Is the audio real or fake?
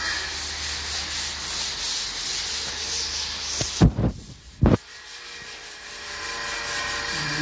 real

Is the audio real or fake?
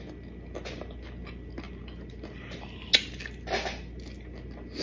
real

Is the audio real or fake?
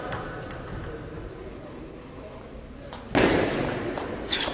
real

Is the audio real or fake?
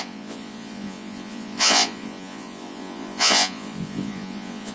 fake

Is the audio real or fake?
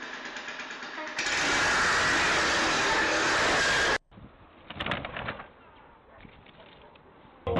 real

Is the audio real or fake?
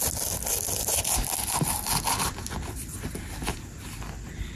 real